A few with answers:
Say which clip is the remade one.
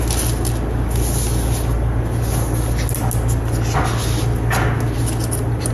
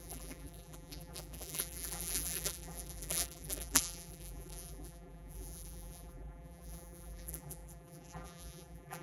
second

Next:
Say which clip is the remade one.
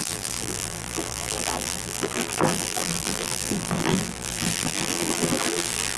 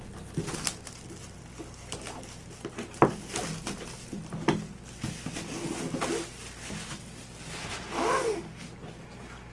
first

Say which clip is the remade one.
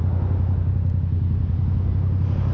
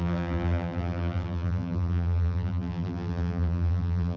second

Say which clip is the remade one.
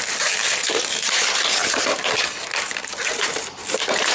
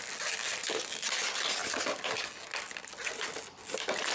first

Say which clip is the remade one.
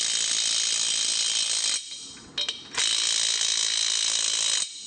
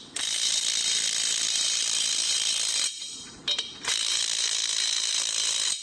second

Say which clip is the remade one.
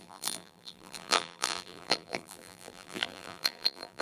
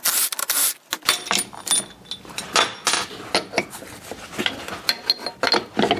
first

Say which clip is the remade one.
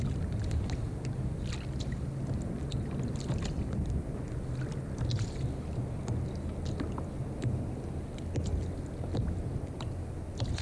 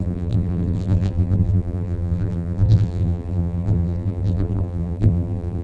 second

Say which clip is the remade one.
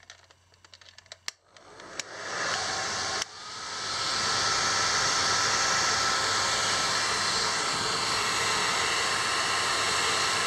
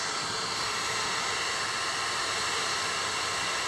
second